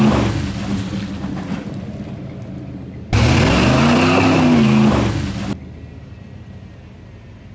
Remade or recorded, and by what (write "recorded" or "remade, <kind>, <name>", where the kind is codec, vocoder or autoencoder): recorded